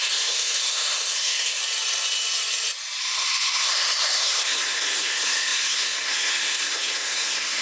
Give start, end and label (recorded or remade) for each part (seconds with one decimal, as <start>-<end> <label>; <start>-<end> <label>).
0.0-1.6 remade; 1.6-3.0 recorded; 3.0-7.6 remade